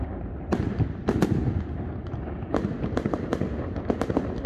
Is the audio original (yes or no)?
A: yes